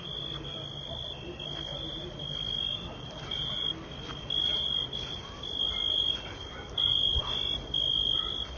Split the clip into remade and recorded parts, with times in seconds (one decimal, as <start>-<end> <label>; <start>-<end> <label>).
0.0-8.6 recorded